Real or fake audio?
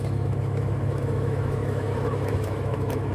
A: fake